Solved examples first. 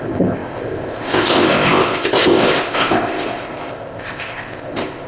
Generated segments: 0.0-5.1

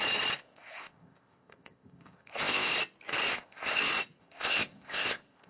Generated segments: 0.4-2.7; 3.3-3.8; 4.2-5.5

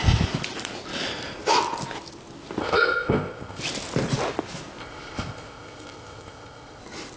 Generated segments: 2.6-3.6; 4.8-6.8

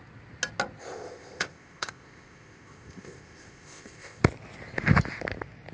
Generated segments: 0.8-4.2

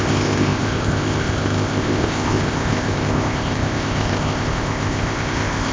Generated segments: 0.0-5.7

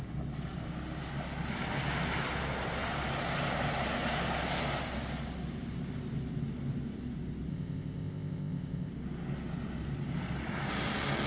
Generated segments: 7.5-8.9